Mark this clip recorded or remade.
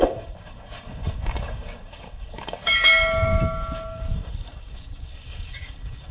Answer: remade